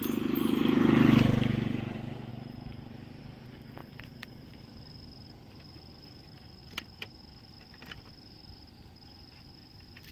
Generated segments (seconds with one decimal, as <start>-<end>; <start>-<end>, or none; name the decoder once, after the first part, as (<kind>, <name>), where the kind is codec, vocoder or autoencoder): 2.3-3.2 (vocoder, BigVGAN v2); 3.8-4.6